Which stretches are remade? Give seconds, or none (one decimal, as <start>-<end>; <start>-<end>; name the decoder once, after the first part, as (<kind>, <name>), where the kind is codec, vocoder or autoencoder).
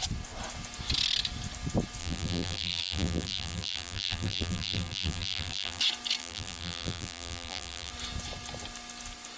2.0-5.8 (vocoder, BigVGAN v2); 6.2-7.9